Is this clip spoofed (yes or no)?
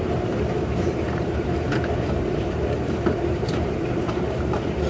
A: yes